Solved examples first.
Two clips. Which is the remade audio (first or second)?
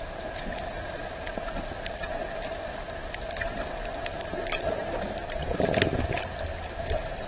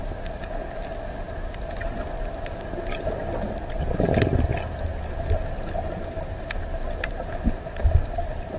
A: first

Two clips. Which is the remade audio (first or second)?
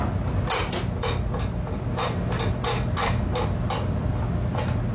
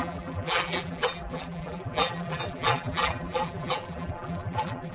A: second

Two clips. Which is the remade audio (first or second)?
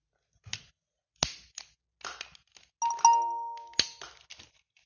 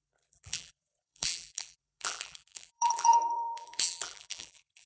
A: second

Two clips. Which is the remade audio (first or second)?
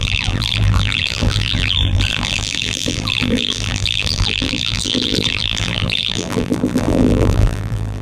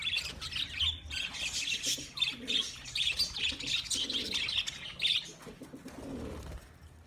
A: first